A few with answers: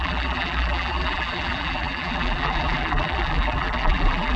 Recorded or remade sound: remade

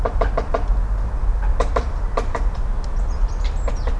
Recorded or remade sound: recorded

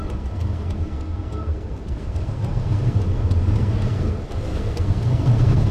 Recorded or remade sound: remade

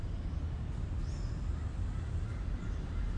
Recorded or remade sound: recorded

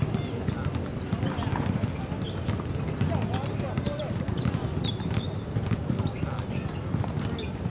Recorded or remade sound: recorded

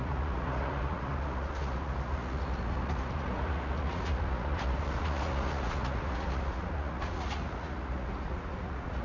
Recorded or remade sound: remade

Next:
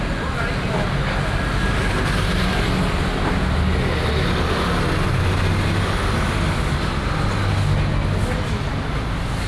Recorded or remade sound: recorded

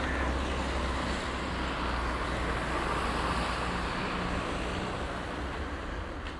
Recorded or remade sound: recorded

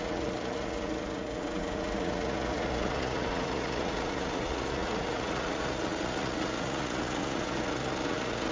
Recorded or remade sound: remade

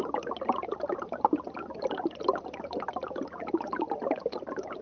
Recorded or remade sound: recorded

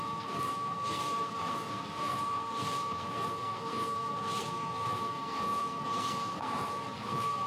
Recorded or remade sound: remade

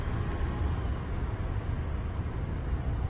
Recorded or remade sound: remade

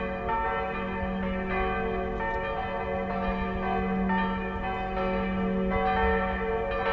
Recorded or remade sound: recorded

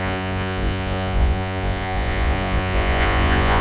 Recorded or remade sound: remade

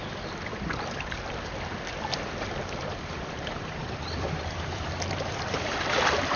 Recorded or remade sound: remade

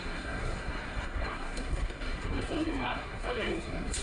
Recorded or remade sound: remade